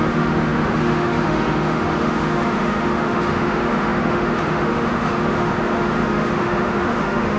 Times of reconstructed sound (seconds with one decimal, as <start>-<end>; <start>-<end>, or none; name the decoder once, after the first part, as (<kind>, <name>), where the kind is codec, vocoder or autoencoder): 0.0-7.4 (autoencoder, DAC-VAE)